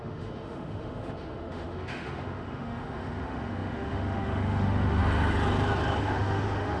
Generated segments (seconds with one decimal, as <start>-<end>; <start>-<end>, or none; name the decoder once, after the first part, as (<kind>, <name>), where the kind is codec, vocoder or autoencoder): 0.0-5.0 (autoencoder, DAC-VAE); 6.0-6.8

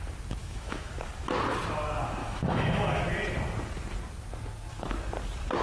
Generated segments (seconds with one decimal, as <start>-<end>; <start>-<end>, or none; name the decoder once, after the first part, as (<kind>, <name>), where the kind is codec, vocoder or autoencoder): 0.4-0.9 (autoencoder, DAC-VAE); 2.2-3.0

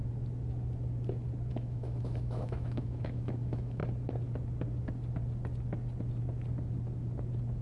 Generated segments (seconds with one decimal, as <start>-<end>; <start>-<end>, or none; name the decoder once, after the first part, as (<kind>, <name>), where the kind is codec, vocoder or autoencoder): 1.5-3.8 (autoencoder, DAC-VAE)